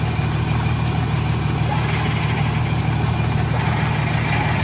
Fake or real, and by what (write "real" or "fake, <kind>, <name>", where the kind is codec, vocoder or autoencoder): real